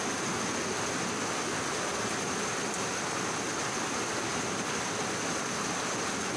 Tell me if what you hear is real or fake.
real